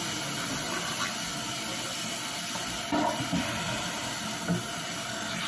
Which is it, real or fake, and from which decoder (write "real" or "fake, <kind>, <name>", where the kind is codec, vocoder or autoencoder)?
real